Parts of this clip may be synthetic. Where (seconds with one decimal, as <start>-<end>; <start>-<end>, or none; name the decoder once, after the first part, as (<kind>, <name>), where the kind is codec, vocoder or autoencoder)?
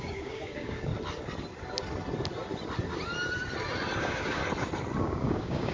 0.0-0.9 (codec, DAC); 4.0-4.4; 5.0-5.7